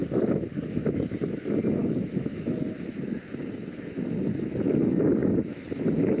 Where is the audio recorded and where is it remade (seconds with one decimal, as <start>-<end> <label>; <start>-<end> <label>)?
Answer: 0.0-1.2 remade; 1.2-1.8 recorded; 1.8-2.6 remade; 2.6-6.2 recorded